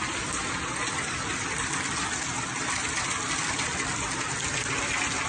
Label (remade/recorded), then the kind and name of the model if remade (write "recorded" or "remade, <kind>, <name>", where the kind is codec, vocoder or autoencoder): recorded